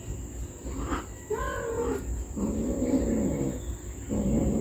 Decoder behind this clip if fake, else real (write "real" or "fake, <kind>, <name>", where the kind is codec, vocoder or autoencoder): real